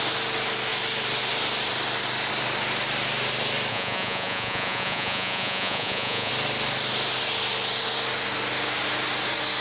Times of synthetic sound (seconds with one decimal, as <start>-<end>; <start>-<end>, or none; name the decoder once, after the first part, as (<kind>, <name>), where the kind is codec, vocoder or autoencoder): 3.7-6.3 (vocoder, Vocos)